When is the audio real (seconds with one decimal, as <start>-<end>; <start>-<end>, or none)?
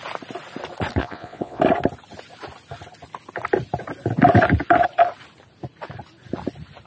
0.0-1.0; 1.6-6.9